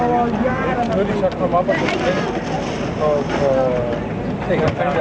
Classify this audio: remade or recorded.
recorded